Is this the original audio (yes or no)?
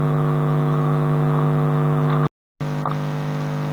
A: yes